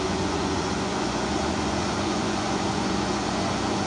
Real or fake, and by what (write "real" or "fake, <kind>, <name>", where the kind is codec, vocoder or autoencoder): fake, vocoder, Vocos